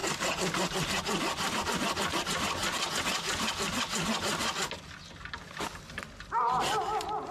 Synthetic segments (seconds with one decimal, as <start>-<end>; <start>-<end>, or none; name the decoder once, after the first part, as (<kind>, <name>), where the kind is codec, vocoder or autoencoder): none

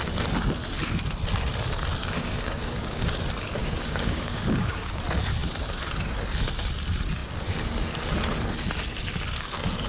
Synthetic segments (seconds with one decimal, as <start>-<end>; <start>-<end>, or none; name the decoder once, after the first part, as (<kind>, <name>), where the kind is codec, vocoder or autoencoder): 2.0-3.2 (codec, DAC); 3.6-5.0

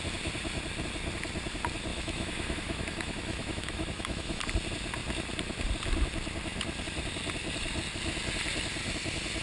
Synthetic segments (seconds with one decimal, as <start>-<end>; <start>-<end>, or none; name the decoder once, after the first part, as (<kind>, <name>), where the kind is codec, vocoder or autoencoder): 1.9-4.4 (autoencoder, DAC-VAE)

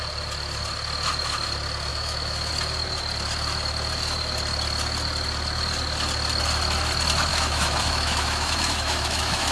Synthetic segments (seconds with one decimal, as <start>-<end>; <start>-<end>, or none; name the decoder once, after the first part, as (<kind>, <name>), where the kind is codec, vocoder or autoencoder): 1.9-2.5 (autoencoder, DAC-VAE); 7.3-9.5